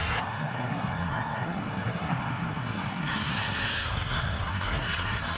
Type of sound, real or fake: fake